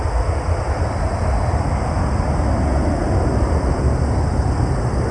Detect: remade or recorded recorded